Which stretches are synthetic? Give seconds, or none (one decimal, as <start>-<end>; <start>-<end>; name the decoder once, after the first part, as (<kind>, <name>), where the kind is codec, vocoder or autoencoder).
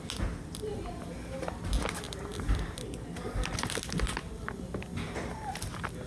none